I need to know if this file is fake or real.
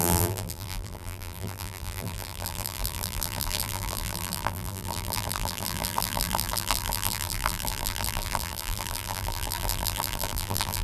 fake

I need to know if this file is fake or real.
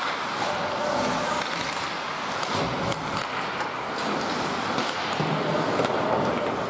real